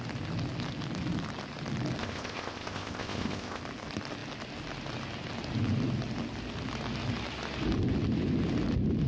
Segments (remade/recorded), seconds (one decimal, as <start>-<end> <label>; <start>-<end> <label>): 0.0-2.0 recorded; 2.0-3.6 remade; 3.6-9.1 recorded

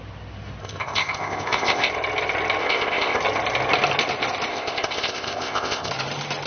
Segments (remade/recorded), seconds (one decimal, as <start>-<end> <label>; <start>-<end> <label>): 0.0-0.6 recorded; 0.6-1.9 remade; 1.9-2.6 recorded; 2.6-3.2 remade; 3.2-4.5 recorded; 4.5-5.9 remade; 5.9-6.5 recorded